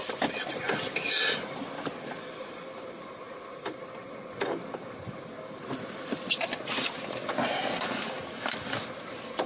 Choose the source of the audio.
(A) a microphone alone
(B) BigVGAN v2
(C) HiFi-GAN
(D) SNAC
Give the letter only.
A